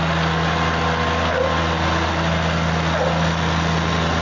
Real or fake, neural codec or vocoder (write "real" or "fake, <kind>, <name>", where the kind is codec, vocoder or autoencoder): real